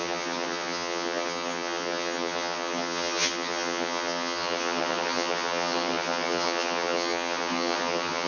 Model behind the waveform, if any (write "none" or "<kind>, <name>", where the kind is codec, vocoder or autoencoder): vocoder, HiFi-GAN